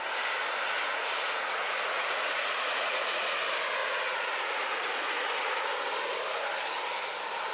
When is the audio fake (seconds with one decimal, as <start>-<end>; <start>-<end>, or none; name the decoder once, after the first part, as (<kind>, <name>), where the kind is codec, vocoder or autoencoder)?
0.9-3.4 (vocoder, Vocos); 3.8-5.7